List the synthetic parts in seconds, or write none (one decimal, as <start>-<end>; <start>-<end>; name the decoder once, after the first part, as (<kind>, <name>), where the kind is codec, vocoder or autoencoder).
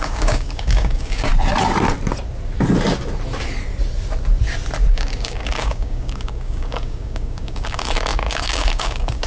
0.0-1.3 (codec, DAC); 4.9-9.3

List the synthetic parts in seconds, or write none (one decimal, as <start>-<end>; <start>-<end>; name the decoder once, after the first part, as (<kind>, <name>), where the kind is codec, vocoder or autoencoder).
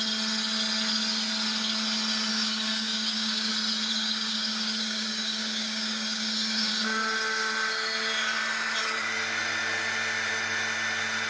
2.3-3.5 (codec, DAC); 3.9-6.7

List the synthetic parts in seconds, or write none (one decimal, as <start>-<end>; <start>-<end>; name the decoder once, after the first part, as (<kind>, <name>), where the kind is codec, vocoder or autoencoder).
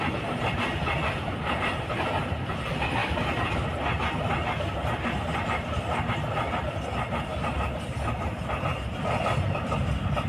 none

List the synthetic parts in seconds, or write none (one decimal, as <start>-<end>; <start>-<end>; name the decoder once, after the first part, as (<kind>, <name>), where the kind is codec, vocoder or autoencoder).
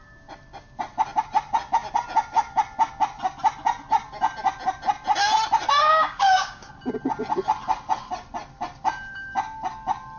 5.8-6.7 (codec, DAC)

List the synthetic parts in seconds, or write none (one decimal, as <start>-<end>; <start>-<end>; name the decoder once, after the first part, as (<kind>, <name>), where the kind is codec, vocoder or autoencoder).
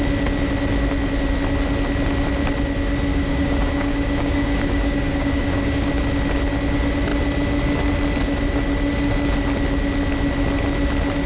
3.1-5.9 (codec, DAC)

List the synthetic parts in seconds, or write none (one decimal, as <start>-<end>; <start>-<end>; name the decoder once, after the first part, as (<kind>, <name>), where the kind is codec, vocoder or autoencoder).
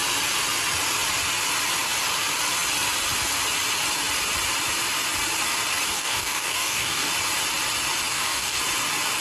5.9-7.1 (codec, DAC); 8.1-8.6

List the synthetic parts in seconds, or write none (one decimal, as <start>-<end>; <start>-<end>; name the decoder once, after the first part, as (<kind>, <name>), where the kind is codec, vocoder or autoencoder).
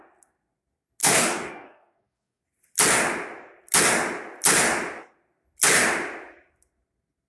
1.0-2.4 (codec, DAC)